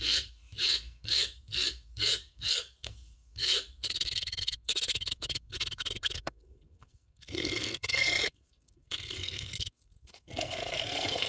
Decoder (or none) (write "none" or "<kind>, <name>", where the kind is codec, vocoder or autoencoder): codec, SNAC